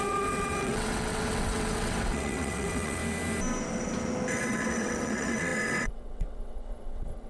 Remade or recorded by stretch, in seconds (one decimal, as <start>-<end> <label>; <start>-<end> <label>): 0.0-3.0 remade; 3.0-4.3 recorded; 4.3-7.3 remade